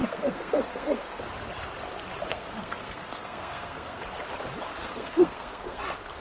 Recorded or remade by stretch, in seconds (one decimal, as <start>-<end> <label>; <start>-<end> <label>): 0.0-1.2 remade; 1.2-2.3 recorded; 2.3-4.0 remade; 4.0-4.8 recorded; 4.8-5.8 remade; 5.8-6.2 recorded